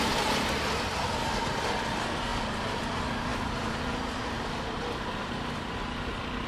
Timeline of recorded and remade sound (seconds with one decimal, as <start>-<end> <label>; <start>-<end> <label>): 0.0-6.5 recorded